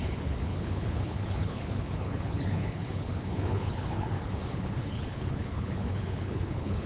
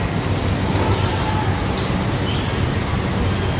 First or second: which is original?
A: second